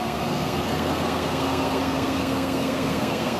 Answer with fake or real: fake